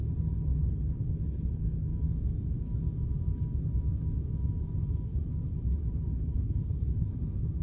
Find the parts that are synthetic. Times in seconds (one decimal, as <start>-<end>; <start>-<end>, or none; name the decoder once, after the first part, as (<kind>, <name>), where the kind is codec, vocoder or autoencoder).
0.0-1.9 (codec, HILCodec); 4.6-7.6